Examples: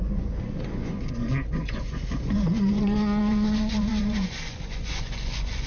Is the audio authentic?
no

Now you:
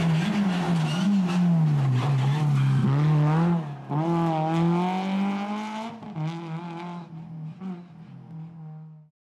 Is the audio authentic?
yes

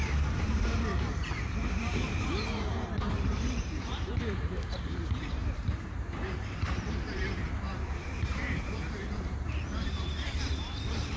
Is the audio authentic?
no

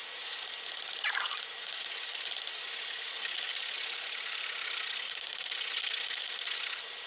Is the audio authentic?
yes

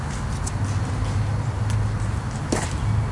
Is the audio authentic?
yes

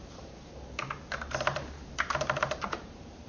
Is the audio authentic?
no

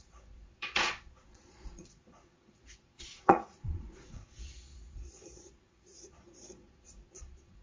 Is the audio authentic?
no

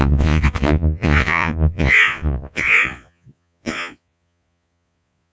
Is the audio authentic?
no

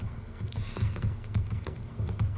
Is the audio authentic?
no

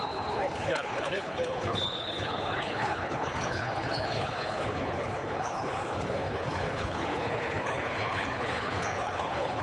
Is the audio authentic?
no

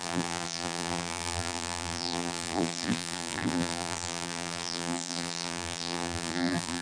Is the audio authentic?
no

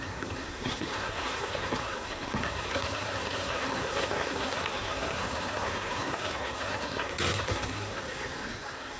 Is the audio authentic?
no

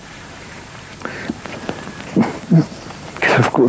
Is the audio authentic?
no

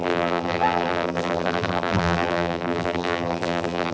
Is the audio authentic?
no